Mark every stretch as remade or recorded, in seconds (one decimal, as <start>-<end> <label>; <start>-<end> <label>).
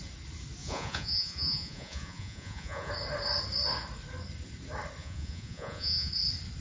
0.0-0.6 recorded; 0.6-2.9 remade; 2.9-5.0 recorded; 5.0-6.1 remade; 6.1-6.6 recorded